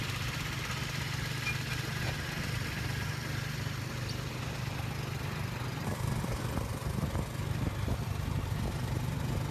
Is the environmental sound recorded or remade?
recorded